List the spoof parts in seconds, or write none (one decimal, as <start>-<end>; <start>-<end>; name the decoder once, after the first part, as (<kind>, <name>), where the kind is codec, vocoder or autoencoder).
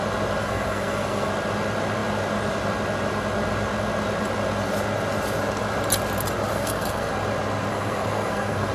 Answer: 0.4-1.3 (codec, SNAC); 6.5-7.1; 7.7-8.7